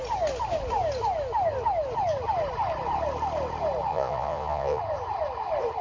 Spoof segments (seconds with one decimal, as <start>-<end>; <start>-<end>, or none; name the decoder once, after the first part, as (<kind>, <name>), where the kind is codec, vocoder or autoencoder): 3.9-4.8 (vocoder, Vocos)